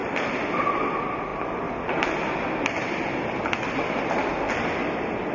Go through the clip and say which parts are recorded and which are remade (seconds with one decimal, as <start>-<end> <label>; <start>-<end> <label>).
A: 0.0-5.3 recorded